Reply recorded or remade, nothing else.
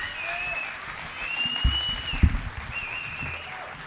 recorded